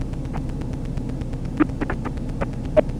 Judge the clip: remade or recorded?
recorded